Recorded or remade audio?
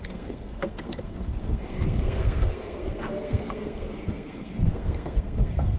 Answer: remade